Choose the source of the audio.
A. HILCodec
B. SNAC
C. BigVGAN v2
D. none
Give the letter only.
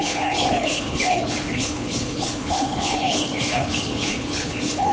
A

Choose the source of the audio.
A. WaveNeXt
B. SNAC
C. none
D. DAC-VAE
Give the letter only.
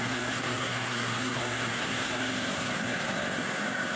B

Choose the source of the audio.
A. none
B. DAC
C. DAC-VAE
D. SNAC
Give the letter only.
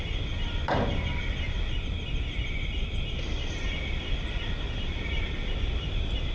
A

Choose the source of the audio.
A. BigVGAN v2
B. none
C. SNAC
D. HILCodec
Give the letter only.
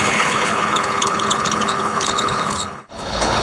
D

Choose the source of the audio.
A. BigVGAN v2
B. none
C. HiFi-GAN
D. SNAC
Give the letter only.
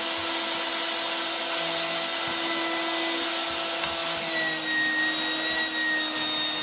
B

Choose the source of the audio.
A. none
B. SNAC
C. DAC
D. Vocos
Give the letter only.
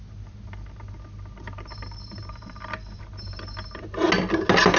A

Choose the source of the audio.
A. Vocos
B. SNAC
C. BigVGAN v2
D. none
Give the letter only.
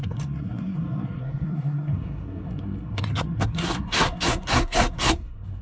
B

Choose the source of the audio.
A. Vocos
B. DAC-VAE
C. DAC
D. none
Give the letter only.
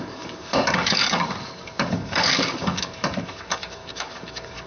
C